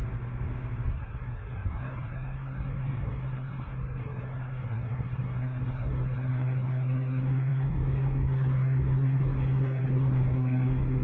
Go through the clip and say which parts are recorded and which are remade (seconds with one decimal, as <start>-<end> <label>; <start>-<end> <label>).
0.0-0.9 recorded; 0.9-11.0 remade